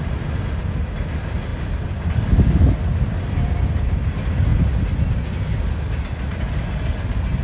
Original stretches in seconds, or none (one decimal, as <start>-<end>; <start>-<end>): 0.0-7.4